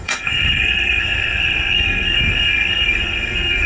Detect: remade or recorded remade